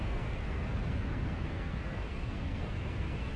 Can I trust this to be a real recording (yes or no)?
no